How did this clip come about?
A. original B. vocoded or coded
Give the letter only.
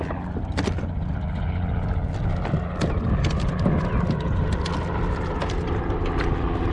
A